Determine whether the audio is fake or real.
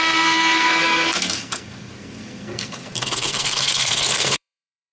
fake